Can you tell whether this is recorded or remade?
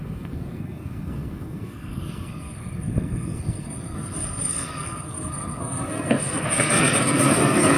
remade